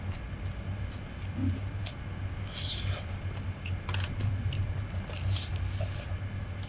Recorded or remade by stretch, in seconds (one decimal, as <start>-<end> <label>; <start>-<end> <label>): 0.0-6.7 recorded